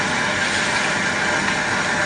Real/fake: real